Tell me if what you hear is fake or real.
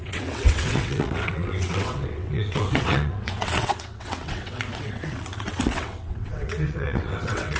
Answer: fake